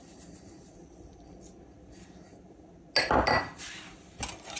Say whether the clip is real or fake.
real